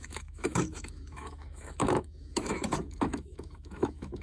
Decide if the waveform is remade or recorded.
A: remade